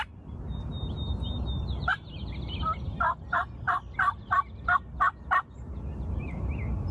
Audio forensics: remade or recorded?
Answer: recorded